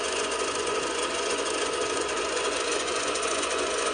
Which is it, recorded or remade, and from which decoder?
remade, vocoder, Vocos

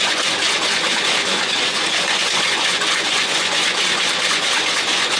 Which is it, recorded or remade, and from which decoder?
remade, vocoder, Vocos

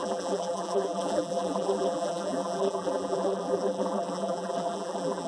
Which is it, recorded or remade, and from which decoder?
remade, vocoder, BigVGAN v2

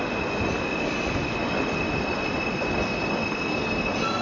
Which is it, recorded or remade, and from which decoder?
recorded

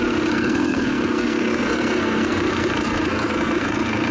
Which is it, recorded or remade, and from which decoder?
remade, codec, SNAC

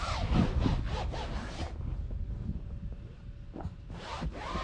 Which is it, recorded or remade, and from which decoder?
recorded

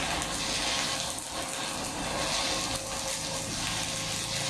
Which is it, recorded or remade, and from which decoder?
recorded